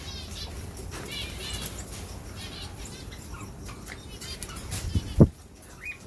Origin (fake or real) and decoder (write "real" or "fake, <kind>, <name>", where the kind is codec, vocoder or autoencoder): real